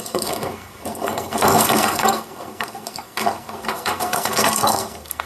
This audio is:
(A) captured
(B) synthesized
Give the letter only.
B